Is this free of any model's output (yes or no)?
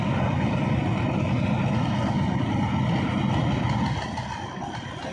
yes